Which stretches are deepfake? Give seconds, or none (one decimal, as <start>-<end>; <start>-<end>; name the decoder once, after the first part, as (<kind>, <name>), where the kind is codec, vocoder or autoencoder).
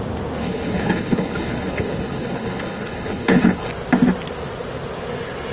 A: 0.4-3.7 (codec, HILCodec)